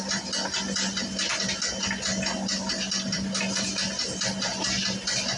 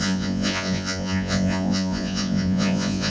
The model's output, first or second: second